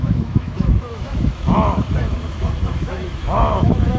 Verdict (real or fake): fake